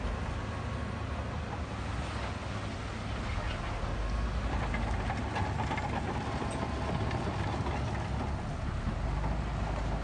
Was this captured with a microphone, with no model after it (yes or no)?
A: yes